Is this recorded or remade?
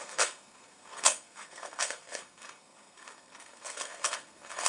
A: remade